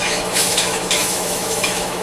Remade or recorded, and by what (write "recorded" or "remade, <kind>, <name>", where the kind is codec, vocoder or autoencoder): remade, autoencoder, DAC-VAE